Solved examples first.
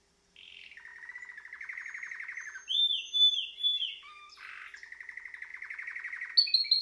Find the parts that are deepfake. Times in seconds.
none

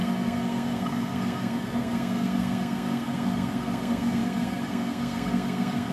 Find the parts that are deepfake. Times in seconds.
0.0-5.9 (codec, SNAC)

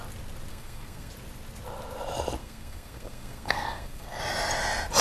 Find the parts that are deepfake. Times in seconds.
0.5-1.1 (codec, SNAC); 2.4-4.2